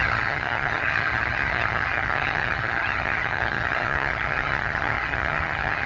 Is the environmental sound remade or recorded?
remade